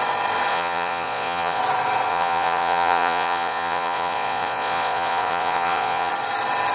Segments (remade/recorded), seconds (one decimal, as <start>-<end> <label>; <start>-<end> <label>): 0.0-0.5 recorded; 0.5-1.6 remade; 1.6-2.1 recorded; 2.1-6.1 remade; 6.1-6.7 recorded

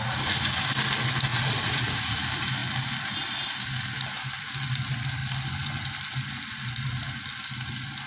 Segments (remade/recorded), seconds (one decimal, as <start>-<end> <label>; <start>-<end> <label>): 0.0-1.3 recorded; 1.3-2.2 remade; 2.2-8.1 recorded

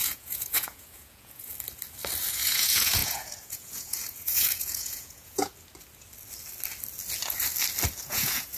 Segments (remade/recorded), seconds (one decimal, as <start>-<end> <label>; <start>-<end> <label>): 0.0-1.5 remade; 1.5-2.3 recorded; 2.3-5.5 remade; 5.5-8.0 recorded; 8.0-8.6 remade